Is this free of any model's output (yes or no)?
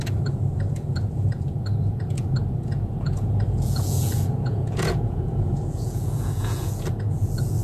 no